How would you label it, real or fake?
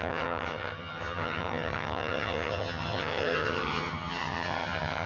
fake